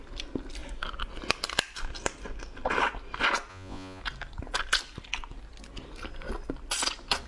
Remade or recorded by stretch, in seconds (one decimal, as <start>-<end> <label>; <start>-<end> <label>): 0.0-3.5 recorded; 3.5-4.0 remade; 4.0-7.3 recorded